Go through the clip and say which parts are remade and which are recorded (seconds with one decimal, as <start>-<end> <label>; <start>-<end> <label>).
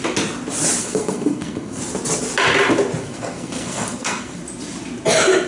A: 0.0-0.8 recorded; 0.8-1.8 remade; 1.8-3.0 recorded; 3.0-4.4 remade; 4.4-5.5 recorded